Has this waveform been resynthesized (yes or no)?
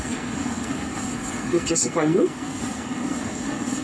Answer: yes